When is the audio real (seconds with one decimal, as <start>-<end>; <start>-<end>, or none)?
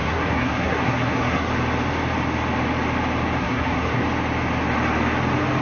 1.5-3.4; 4.0-5.6